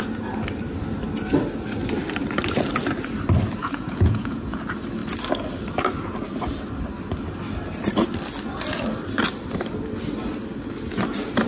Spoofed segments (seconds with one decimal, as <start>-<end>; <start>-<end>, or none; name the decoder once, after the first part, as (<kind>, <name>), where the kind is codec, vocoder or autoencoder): 3.6-4.6 (vocoder, Vocos)